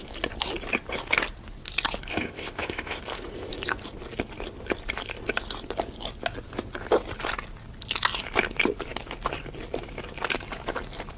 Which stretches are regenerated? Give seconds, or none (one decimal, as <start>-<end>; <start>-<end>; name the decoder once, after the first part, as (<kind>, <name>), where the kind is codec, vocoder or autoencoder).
2.1-3.0 (codec, ZipCodec)